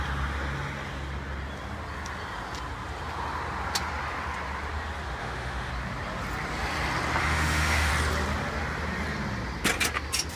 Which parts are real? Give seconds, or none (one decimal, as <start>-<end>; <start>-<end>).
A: 0.0-5.2; 5.7-7.2; 7.9-10.4

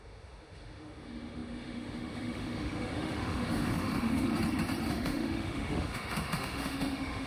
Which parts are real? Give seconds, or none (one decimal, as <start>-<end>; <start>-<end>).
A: 4.3-4.9

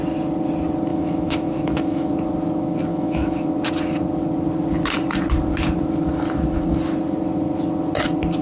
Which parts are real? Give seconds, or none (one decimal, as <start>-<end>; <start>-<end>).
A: 0.0-0.9; 2.1-2.9; 3.5-8.4

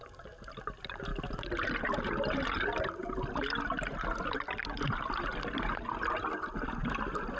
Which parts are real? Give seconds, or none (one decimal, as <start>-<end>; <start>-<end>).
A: 0.0-7.4

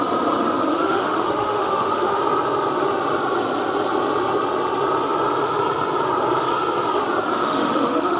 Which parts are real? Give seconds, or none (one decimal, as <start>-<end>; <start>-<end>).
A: 0.0-0.7; 2.2-7.4